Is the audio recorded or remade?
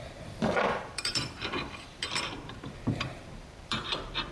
remade